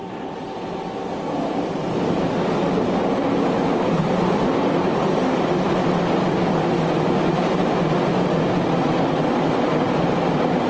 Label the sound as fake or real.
real